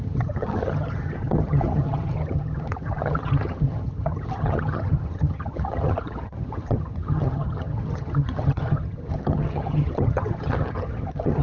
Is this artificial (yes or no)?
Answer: yes